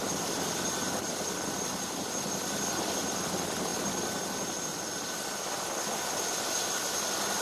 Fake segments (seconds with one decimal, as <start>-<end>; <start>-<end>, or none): none

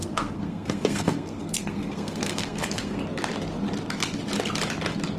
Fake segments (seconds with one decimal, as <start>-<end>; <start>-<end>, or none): 0.0-3.0

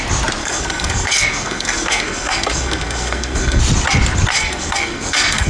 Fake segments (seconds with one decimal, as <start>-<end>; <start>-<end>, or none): 0.4-3.6; 4.3-5.5

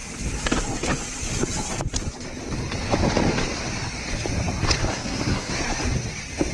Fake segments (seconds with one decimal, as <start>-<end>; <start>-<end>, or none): 4.9-5.5

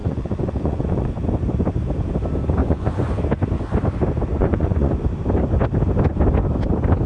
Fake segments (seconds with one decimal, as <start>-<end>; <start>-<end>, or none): 0.0-1.1; 2.6-3.1; 4.3-4.9

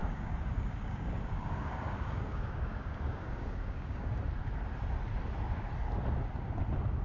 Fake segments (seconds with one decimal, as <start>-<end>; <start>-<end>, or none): 0.0-4.2

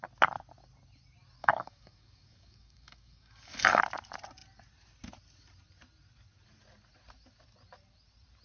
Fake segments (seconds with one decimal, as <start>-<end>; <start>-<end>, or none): 1.4-3.8